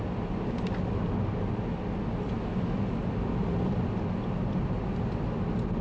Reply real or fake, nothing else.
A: real